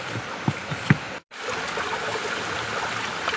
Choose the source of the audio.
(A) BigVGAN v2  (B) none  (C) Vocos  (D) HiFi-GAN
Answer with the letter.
B